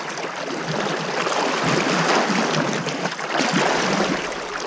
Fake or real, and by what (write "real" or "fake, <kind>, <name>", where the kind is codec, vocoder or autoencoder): real